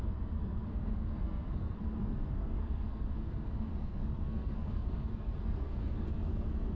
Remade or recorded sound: remade